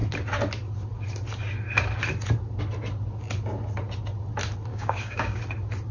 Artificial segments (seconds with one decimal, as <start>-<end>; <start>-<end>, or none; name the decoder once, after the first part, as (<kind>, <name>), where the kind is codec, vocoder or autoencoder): 4.7-5.4 (codec, DAC)